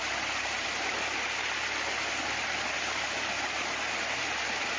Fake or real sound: fake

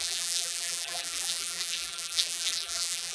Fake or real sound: fake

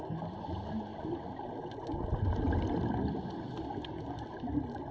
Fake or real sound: real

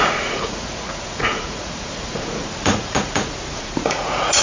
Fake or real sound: fake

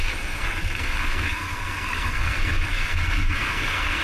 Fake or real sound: fake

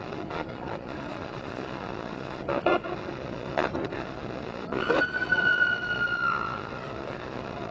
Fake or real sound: fake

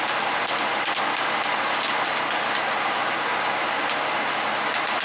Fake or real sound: real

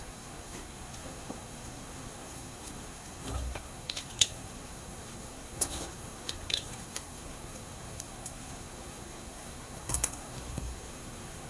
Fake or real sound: fake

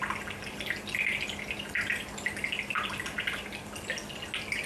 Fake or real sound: real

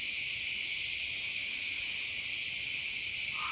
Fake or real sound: real